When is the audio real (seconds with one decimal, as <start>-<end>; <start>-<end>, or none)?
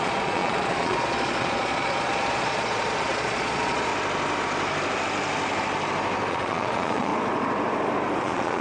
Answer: 3.9-6.3; 7.1-8.2